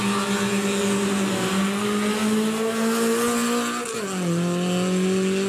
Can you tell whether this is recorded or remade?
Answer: recorded